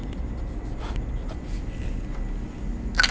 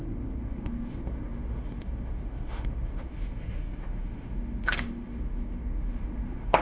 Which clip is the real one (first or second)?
first